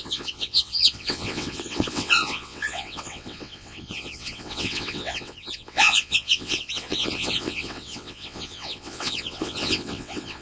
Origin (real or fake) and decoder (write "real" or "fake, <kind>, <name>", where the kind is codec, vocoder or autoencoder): fake, vocoder, WaveNeXt